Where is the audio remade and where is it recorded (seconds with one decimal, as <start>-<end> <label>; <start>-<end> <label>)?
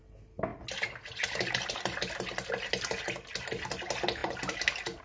0.0-5.0 recorded